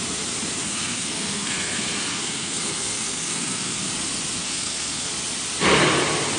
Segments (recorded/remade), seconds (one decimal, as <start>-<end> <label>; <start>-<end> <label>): 0.0-0.6 recorded; 0.6-3.9 remade; 3.9-4.4 recorded; 4.4-5.1 remade; 5.1-6.4 recorded